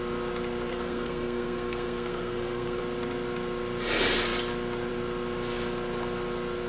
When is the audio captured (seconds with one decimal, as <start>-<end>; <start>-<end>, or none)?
0.0-0.7; 2.8-6.7